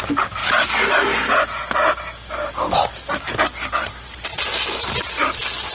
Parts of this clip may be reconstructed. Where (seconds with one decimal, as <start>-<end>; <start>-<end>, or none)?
none